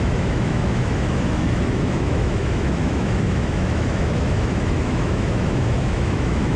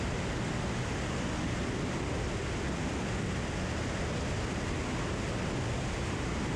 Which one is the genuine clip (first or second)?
second